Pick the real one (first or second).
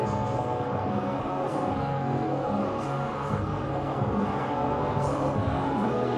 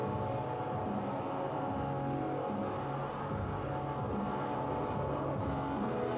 second